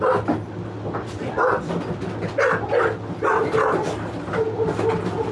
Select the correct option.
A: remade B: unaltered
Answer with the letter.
B